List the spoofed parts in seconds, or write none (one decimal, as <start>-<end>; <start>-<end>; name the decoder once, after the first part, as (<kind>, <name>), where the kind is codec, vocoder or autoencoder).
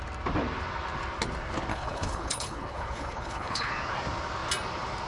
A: 1.7-3.7 (codec, HILCodec)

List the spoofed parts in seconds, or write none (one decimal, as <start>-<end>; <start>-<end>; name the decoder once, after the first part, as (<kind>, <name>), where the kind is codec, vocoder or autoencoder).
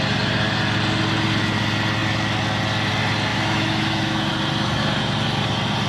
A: 3.3-4.3 (autoencoder, DAC-VAE)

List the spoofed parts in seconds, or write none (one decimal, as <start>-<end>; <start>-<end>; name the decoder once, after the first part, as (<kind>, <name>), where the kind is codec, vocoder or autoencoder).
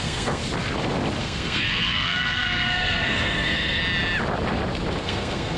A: 0.0-0.4 (codec, SNAC); 1.2-3.8; 5.0-5.6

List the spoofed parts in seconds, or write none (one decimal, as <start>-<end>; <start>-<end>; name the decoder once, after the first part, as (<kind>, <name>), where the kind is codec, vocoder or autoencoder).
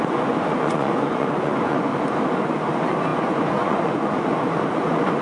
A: 0.0-1.9 (vocoder, Vocos); 2.7-5.2